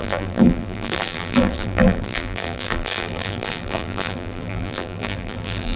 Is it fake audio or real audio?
fake